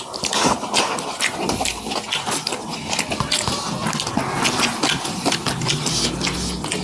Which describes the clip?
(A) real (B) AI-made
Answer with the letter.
A